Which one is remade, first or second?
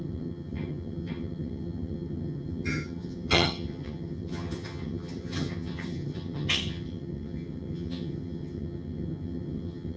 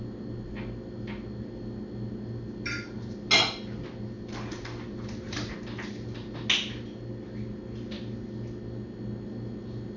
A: first